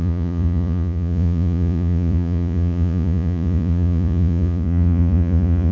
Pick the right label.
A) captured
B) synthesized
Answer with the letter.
B